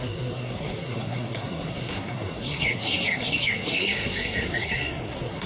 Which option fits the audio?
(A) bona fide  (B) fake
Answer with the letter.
B